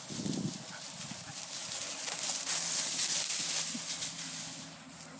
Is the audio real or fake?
real